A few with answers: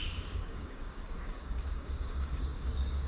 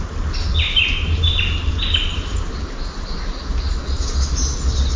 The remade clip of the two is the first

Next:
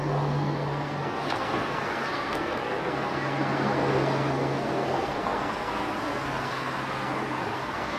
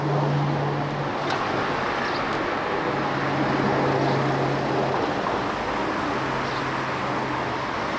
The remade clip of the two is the first